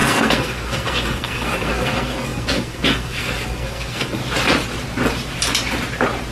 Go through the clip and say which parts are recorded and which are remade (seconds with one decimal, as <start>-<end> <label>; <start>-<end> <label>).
0.0-4.2 remade; 4.2-6.3 recorded